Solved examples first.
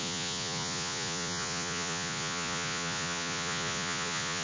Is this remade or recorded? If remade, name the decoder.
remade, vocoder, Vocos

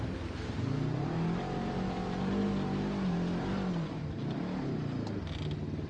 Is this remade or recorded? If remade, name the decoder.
recorded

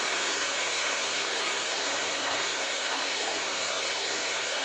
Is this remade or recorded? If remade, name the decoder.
remade, codec, SNAC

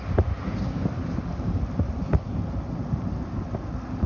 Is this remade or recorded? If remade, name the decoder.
recorded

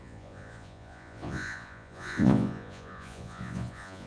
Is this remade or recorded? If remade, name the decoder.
remade, vocoder, Vocos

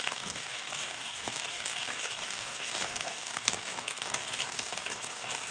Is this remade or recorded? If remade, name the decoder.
remade, codec, DAC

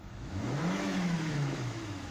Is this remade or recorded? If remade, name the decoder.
remade, autoencoder, DAC-VAE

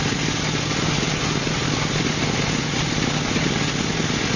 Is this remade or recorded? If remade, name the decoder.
recorded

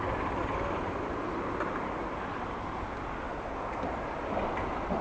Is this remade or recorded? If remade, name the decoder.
recorded